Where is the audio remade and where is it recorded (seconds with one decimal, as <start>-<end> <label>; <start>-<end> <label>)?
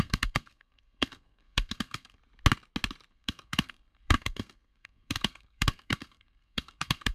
0.0-2.2 remade; 2.2-3.1 recorded; 3.1-7.1 remade